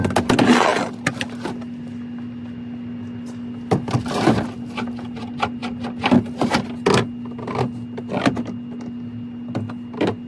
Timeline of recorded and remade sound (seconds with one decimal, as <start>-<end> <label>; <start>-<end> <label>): 0.0-10.3 recorded

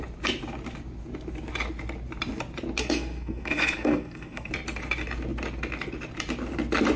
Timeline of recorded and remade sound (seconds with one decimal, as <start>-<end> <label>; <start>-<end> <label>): 0.0-2.8 recorded; 2.8-4.5 remade; 4.5-7.0 recorded

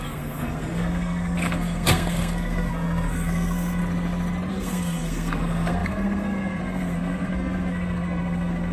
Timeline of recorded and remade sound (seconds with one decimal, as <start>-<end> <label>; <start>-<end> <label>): 0.0-3.8 remade; 3.8-4.5 recorded; 4.5-8.7 remade

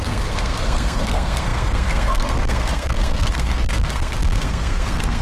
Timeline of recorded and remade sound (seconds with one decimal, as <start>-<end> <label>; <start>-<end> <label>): 0.0-5.2 remade

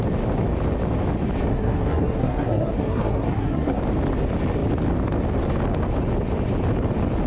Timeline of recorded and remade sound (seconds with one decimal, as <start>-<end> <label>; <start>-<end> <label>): 0.0-1.5 recorded; 1.5-3.8 remade; 3.8-7.3 recorded